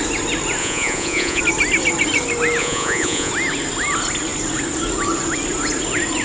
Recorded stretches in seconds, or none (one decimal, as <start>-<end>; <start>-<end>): 0.0-0.6; 1.4-2.6; 3.3-6.2